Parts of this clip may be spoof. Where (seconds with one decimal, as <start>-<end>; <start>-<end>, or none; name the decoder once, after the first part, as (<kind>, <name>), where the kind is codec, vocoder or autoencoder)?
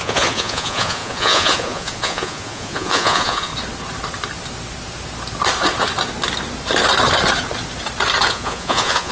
0.0-3.5 (vocoder, Vocos); 8.3-9.1